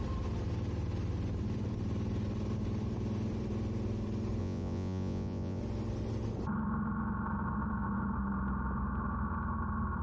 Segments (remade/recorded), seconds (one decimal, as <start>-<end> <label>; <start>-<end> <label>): 0.0-4.4 recorded; 4.4-5.6 remade; 5.6-10.0 recorded